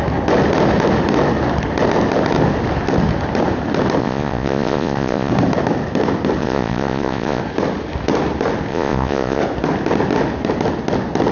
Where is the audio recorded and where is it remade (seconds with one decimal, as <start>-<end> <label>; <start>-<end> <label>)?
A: 0.0-4.0 recorded; 4.0-5.3 remade; 5.3-6.4 recorded; 6.4-7.4 remade; 7.4-8.7 recorded; 8.7-9.4 remade; 9.4-11.3 recorded